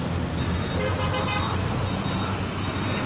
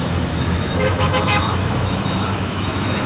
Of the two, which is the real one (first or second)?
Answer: first